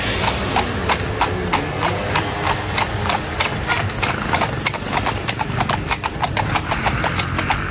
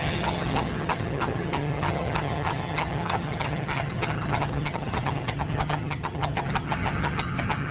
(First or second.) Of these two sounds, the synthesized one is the second